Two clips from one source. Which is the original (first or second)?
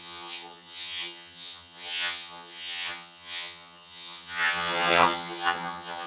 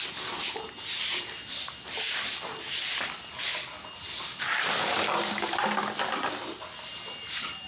second